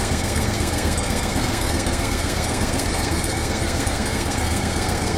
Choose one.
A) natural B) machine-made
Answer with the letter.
B